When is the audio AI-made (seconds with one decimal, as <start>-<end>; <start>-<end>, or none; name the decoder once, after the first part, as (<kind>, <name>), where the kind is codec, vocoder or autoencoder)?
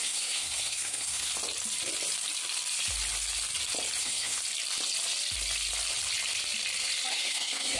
0.0-1.3 (codec, SNAC); 4.0-4.4; 7.1-7.8